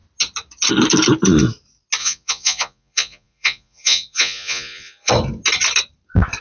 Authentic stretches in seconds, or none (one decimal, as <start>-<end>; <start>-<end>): 0.0-2.0; 5.1-6.4